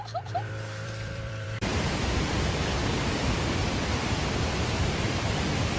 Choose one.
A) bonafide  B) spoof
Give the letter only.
B